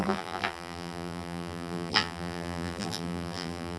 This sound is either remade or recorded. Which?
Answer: remade